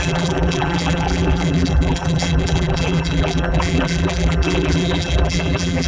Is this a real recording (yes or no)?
no